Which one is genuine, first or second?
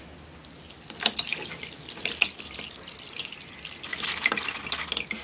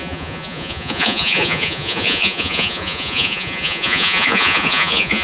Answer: first